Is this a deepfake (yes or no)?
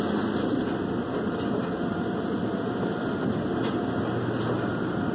no